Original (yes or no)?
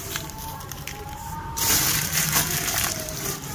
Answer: no